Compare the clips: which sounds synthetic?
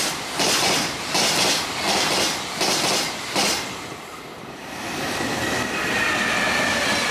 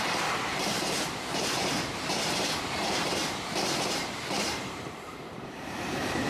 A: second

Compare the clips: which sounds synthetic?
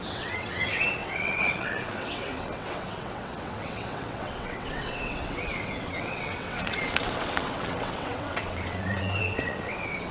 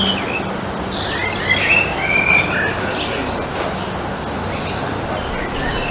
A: first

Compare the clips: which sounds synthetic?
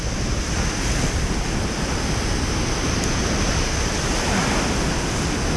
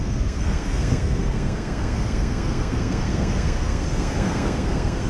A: second